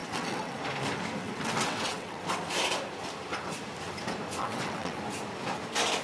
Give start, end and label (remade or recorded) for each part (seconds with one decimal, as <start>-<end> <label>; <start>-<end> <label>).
0.0-0.6 remade; 0.6-1.2 recorded; 1.2-2.2 remade; 2.2-4.4 recorded; 4.4-5.0 remade; 5.0-6.0 recorded